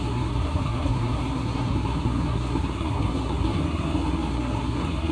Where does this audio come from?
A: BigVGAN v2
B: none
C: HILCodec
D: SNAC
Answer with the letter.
D